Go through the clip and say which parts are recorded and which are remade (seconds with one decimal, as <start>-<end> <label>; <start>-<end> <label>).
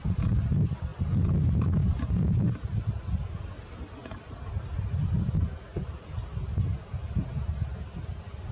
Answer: 0.0-8.5 recorded